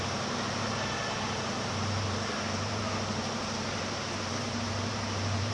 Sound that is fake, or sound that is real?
fake